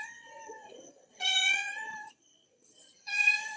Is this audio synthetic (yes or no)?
yes